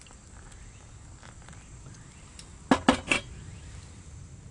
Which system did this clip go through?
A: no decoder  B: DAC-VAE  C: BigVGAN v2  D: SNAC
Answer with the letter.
A